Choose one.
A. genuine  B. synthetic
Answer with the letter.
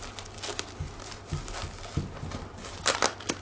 A